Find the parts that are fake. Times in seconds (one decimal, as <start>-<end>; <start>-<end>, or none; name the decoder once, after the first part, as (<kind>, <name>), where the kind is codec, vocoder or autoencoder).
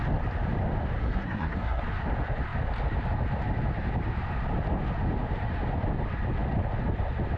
1.0-1.8 (codec, SNAC)